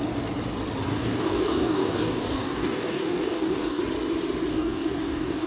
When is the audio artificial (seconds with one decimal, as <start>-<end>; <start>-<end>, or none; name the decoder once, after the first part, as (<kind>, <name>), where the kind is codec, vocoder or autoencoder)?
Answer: 0.9-3.8 (codec, DAC); 4.5-5.5